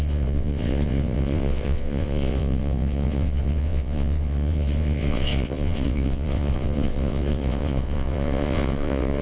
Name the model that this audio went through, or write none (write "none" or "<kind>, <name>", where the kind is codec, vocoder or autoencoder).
vocoder, WaveNeXt